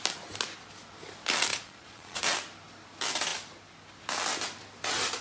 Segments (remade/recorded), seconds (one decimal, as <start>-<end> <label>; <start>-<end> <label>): 0.0-1.5 recorded; 1.5-2.2 remade; 2.2-5.2 recorded